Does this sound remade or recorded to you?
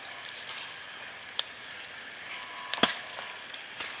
recorded